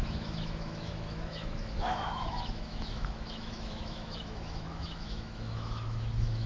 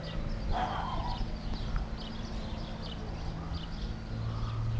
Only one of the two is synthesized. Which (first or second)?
first